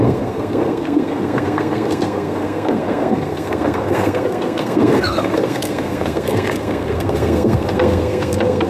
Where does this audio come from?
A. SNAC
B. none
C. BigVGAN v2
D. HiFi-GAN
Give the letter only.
A